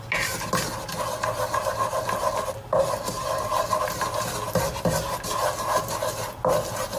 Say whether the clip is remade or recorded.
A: recorded